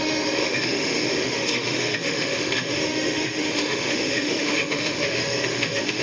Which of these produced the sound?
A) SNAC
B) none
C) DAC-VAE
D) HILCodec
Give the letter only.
C